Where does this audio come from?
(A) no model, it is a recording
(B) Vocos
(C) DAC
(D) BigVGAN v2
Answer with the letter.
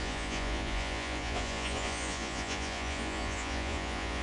B